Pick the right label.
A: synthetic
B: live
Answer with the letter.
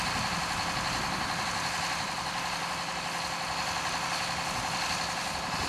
B